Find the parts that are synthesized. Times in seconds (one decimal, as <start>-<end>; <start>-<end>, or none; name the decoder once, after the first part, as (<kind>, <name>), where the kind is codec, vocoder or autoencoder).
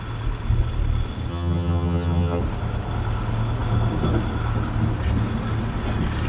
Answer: 1.3-2.4 (vocoder, HiFi-GAN)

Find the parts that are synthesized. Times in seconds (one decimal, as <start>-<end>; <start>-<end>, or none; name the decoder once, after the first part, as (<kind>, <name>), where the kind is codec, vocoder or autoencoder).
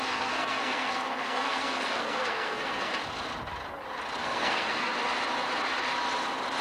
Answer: 0.0-2.9 (codec, SNAC); 4.2-4.9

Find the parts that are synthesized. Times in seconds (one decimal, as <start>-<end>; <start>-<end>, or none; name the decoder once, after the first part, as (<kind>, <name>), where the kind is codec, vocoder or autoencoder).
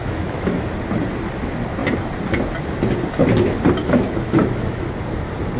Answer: 0.0-0.7 (autoencoder, DAC-VAE); 3.8-4.9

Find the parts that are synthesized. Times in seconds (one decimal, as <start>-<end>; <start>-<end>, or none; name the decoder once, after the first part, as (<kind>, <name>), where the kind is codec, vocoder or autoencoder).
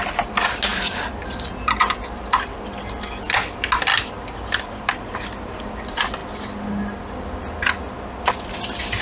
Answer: none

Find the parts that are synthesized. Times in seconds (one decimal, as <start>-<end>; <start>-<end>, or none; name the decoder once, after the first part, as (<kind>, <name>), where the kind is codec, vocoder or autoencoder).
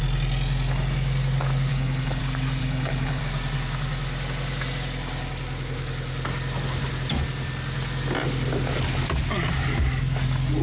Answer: 1.7-2.2 (codec, HILCodec); 2.6-3.2